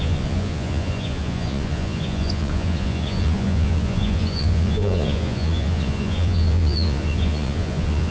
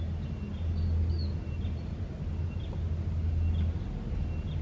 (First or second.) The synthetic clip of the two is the first